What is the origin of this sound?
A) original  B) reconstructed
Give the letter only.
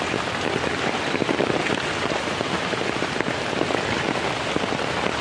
A